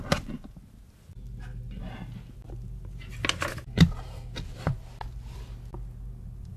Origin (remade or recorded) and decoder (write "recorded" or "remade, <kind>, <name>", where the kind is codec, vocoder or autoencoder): recorded